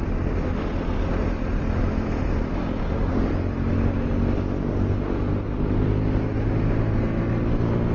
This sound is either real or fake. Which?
real